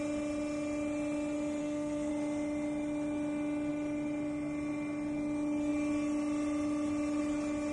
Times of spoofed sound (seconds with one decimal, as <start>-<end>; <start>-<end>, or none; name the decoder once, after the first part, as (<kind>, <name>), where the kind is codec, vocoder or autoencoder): 1.6-2.1 (codec, SNAC)